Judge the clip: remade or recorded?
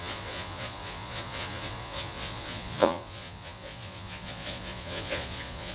remade